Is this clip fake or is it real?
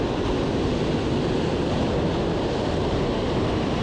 real